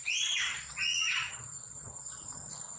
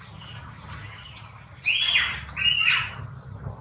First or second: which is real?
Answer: second